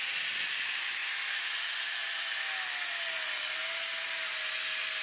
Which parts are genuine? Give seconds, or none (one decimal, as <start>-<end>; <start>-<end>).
0.0-5.0